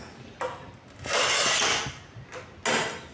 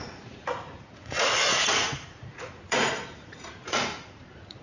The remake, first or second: second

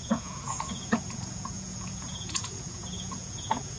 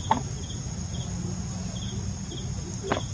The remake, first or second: first